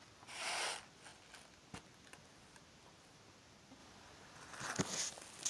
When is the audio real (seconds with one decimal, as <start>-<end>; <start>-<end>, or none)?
0.0-5.5